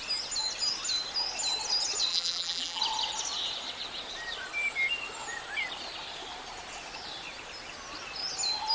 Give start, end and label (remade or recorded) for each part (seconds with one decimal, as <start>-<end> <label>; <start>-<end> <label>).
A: 0.0-2.1 recorded; 2.1-2.8 remade; 2.8-8.7 recorded